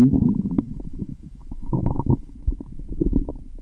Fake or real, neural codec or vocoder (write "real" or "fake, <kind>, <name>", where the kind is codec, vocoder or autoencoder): fake, autoencoder, DAC-VAE